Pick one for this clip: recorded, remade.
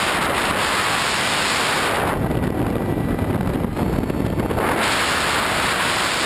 recorded